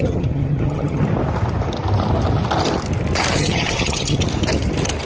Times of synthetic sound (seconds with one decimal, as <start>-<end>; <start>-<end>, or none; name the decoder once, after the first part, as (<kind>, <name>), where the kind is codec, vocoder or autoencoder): 0.0-1.0 (vocoder, HiFi-GAN); 3.3-4.2